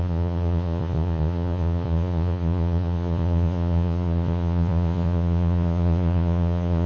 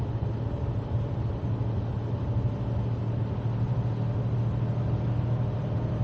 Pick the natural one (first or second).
second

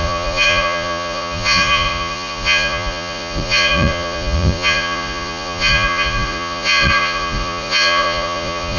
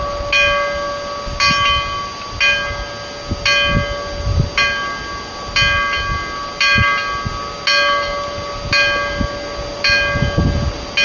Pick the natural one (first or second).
second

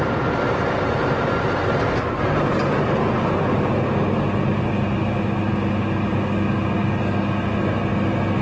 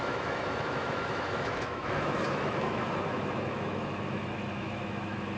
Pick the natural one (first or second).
first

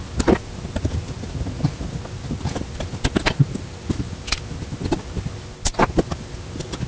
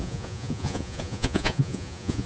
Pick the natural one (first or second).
first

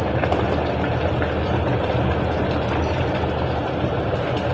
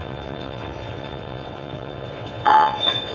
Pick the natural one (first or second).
first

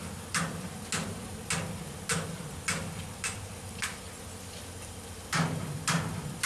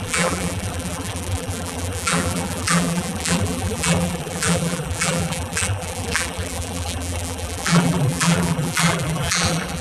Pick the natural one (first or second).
first